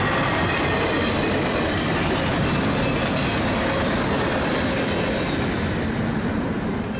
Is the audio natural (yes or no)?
yes